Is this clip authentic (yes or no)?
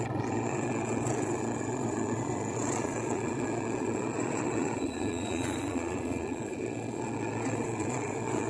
no